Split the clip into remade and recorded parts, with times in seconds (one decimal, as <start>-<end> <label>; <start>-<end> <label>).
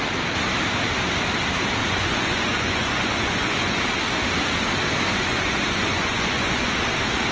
0.0-1.8 recorded; 1.8-3.8 remade; 3.8-5.1 recorded; 5.1-6.7 remade; 6.7-7.3 recorded